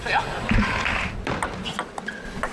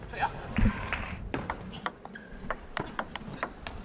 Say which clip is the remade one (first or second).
second